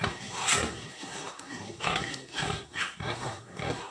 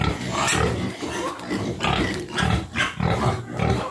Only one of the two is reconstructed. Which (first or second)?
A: first